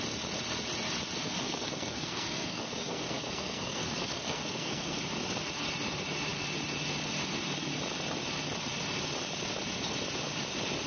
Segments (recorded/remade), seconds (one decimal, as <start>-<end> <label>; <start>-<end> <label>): 0.0-1.2 recorded; 1.2-5.0 remade; 5.0-10.9 recorded